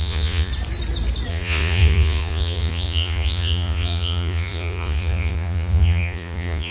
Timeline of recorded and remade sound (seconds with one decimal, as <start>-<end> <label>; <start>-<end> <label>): 0.0-0.5 remade; 0.5-1.3 recorded; 1.3-6.7 remade